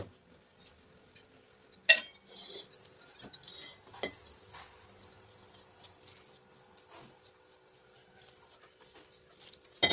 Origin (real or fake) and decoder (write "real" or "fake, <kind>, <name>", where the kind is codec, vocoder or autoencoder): real